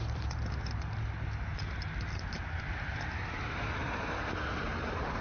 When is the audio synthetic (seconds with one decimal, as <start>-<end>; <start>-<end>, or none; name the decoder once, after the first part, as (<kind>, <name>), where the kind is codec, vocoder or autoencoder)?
0.0-1.5 (vocoder, BigVGAN v2); 2.5-5.2